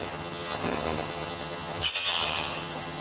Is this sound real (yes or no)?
no